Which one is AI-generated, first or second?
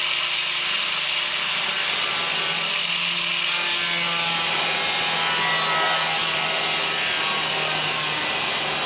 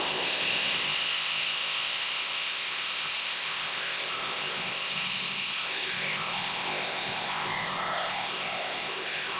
second